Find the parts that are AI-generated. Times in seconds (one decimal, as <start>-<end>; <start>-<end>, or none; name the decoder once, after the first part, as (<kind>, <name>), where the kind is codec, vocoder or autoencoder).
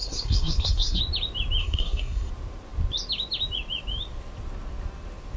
0.0-1.0 (codec, SNAC); 1.6-2.3